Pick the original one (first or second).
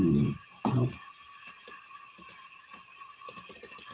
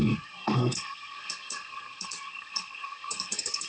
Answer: first